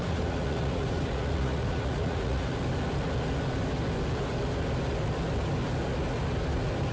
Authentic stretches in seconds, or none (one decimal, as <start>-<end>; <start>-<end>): 2.6-6.9

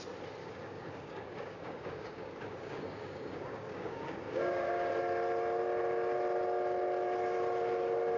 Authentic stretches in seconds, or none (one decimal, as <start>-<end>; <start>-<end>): 0.0-0.4; 4.9-8.2